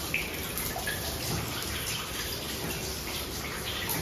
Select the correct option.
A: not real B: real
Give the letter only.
B